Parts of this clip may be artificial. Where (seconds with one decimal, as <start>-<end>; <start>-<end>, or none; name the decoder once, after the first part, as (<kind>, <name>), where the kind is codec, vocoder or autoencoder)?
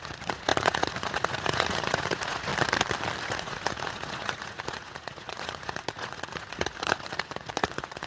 0.0-2.5 (vocoder, Vocos); 3.2-8.1